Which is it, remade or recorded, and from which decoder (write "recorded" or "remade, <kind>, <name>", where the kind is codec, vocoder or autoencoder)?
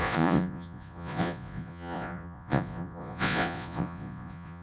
remade, vocoder, Vocos